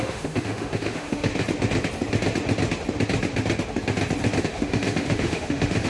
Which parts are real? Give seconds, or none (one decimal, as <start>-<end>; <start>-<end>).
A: 1.3-4.4